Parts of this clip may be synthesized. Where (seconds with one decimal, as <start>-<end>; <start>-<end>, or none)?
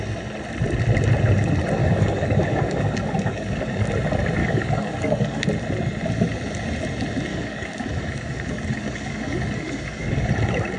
1.8-3.9; 4.4-5.4; 7.3-10.3